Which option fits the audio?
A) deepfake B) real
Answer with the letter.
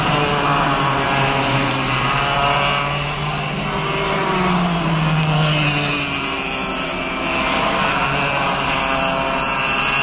B